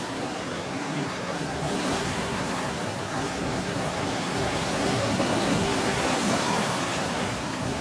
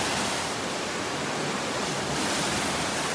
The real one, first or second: second